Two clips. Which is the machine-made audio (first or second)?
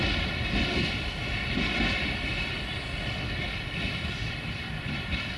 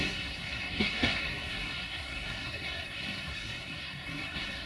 second